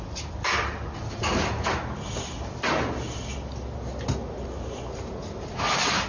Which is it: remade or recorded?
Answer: recorded